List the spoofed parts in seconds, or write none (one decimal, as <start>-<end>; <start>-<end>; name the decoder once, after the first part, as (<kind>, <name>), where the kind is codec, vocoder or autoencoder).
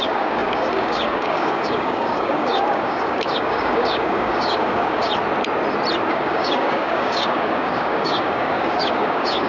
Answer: 0.0-5.1 (codec, DAC); 6.1-9.5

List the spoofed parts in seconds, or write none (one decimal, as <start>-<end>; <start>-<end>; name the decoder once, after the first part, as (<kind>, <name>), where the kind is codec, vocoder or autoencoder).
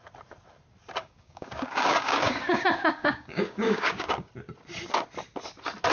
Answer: 1.0-4.3 (codec, DAC)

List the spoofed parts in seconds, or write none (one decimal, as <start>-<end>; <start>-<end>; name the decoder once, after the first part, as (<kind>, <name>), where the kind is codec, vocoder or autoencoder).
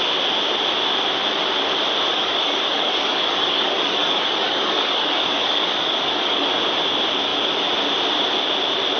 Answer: 2.1-6.5 (codec, DAC)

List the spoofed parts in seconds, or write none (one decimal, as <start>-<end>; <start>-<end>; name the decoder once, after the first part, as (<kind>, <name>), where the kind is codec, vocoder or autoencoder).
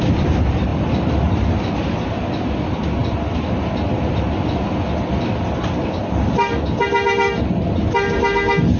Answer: none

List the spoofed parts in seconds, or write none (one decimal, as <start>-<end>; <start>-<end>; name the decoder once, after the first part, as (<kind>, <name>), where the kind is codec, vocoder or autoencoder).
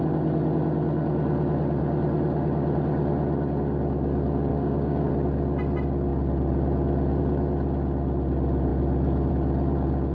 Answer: 4.5-5.1 (codec, DAC)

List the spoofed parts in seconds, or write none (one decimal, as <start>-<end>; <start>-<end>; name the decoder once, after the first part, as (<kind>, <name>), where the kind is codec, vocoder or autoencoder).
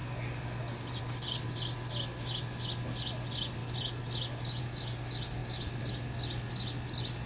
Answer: none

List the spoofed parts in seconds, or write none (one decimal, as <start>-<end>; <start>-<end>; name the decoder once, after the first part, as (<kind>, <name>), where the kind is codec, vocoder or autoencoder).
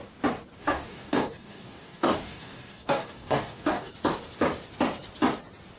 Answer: 0.6-3.9 (codec, DAC)